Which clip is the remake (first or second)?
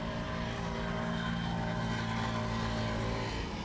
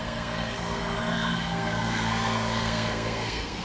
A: second